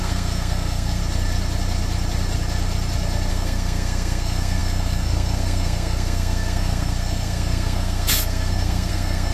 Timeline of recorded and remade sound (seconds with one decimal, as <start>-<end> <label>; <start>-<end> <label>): 0.0-1.0 remade; 1.0-3.3 recorded; 3.3-9.3 remade